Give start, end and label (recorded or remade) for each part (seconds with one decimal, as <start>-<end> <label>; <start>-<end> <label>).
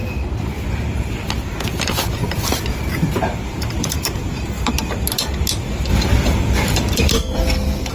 0.0-4.7 remade; 4.7-5.9 recorded; 5.9-7.1 remade; 7.1-7.9 recorded